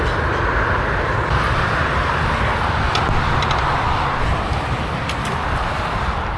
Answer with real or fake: real